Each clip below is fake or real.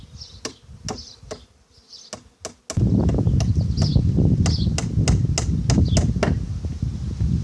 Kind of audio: real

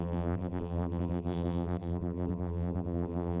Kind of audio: fake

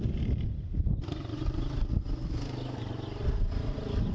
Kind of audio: real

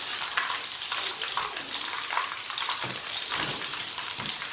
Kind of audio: real